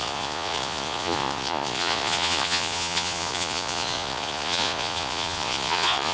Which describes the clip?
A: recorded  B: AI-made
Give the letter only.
B